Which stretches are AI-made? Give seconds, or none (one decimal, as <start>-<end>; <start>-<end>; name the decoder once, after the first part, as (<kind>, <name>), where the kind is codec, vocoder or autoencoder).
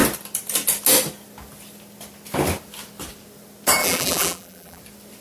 3.8-4.8 (vocoder, BigVGAN v2)